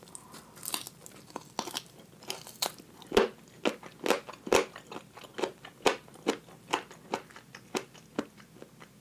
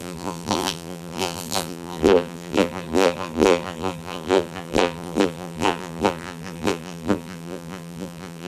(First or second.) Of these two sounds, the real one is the first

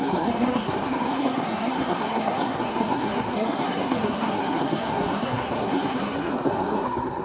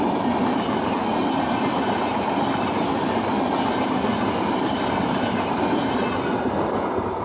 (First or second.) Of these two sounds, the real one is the second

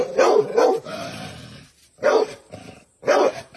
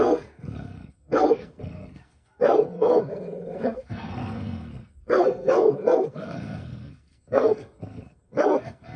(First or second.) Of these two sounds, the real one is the first